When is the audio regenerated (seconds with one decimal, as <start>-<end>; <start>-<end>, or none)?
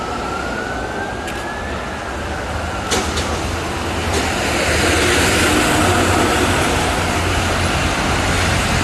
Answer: 6.3-7.0